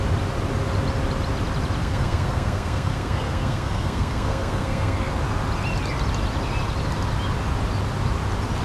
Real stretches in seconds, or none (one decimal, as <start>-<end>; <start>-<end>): 0.0-1.8; 5.1-8.6